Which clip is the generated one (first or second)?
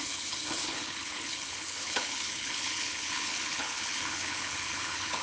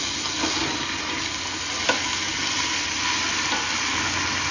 first